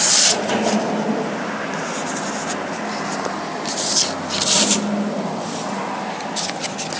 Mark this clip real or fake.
real